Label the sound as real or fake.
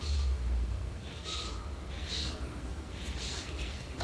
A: fake